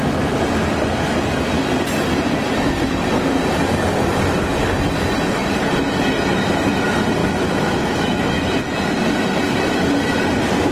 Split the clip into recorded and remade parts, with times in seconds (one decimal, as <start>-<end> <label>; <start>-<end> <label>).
0.0-7.2 recorded; 7.2-8.6 remade; 8.6-10.7 recorded

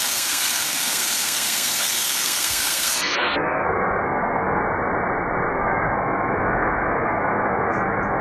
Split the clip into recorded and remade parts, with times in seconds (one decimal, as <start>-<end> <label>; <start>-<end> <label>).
0.0-4.6 remade; 4.6-5.5 recorded; 5.5-8.2 remade